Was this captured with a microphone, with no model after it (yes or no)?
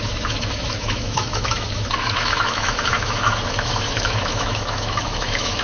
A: no